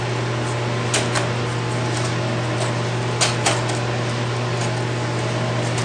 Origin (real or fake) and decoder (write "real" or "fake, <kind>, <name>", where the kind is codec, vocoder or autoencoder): real